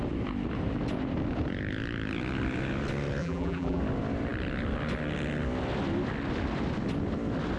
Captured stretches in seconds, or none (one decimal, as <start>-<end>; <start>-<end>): 0.0-3.2; 3.8-7.6